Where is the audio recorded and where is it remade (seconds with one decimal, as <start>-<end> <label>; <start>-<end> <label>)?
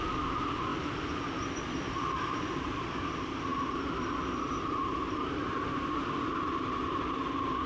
0.0-7.7 recorded